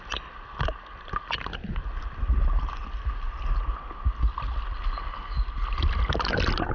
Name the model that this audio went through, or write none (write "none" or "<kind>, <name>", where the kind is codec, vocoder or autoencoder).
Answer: none